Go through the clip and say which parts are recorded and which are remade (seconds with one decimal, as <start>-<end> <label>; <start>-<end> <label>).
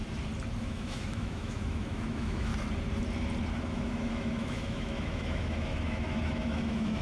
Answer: 0.0-0.6 recorded; 0.6-2.5 remade; 2.5-3.6 recorded; 3.6-7.0 remade